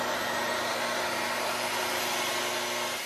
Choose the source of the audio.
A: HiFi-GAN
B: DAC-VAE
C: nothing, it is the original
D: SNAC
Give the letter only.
C